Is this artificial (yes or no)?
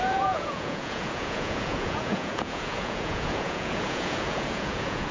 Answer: yes